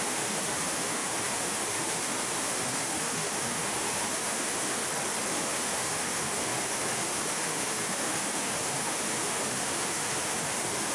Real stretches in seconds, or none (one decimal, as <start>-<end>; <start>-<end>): 4.8-5.3